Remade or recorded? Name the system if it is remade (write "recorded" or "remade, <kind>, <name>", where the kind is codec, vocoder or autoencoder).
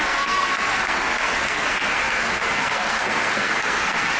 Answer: remade, codec, SNAC